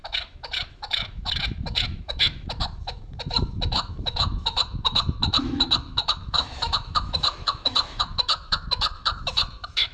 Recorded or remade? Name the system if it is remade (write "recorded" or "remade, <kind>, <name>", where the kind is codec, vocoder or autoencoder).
remade, autoencoder, DAC-VAE